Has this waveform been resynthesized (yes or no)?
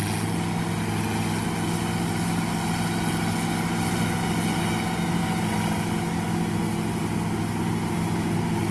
no